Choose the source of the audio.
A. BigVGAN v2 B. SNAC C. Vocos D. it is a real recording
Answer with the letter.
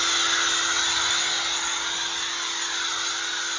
D